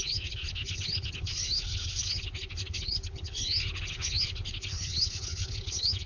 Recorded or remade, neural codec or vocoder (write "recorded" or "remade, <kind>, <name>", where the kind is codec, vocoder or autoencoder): remade, codec, HILCodec